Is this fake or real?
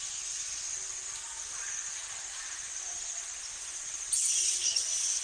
real